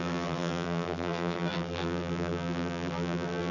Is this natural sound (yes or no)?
no